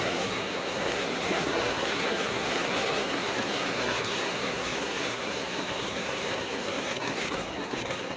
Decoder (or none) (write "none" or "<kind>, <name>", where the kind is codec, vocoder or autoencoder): codec, SNAC